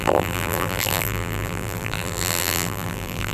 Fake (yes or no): yes